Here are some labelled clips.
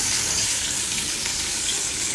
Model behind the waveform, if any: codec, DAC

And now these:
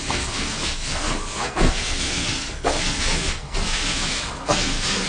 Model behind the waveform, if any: codec, SNAC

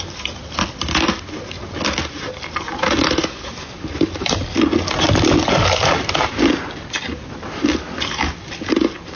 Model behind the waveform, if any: none